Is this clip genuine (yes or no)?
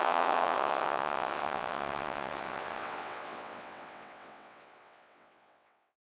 no